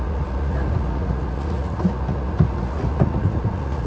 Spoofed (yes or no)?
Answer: yes